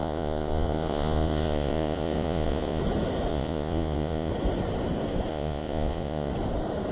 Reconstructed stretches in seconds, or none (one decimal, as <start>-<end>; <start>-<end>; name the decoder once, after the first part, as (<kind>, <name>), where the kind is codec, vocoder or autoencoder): 0.0-2.8 (vocoder, Vocos); 3.3-4.3; 5.3-6.3